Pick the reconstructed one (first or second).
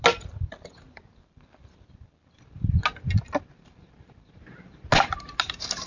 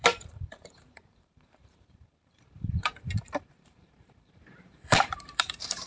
second